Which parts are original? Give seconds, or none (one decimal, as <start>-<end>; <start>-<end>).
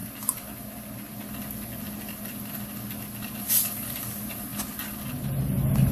0.0-5.9